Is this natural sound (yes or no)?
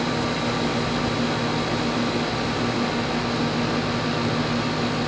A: yes